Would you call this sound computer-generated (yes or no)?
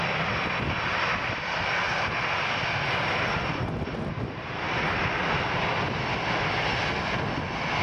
no